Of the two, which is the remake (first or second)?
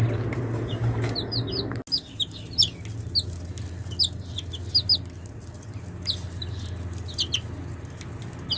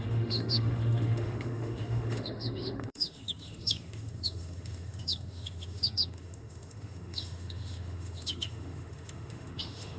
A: second